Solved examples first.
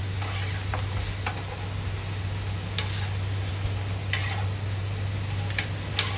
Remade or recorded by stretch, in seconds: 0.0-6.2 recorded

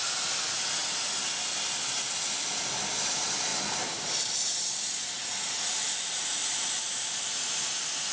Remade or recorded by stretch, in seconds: 0.0-8.1 recorded